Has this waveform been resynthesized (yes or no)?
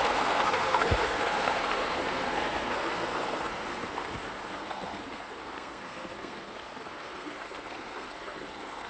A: yes